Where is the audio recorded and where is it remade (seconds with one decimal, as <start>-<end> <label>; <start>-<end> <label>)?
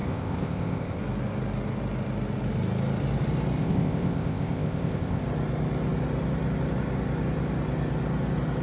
0.0-1.0 remade; 1.0-3.6 recorded; 3.6-5.2 remade; 5.2-8.6 recorded